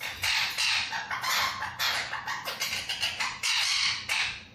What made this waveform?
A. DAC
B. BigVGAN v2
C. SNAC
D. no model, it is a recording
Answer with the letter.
D